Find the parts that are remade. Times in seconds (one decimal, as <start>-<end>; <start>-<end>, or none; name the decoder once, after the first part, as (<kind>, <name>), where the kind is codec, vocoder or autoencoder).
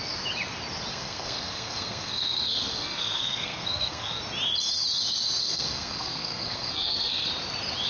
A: 0.9-4.2 (codec, SNAC); 5.4-7.3